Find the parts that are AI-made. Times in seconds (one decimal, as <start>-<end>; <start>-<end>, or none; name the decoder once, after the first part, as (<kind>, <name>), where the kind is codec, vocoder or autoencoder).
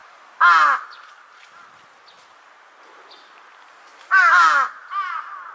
none